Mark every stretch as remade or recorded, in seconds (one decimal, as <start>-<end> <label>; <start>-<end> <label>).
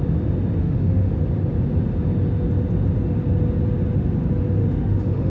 0.0-0.6 recorded; 0.6-1.1 remade; 1.1-4.6 recorded; 4.6-5.3 remade